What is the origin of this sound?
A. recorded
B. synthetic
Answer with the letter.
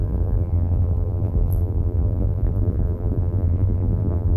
B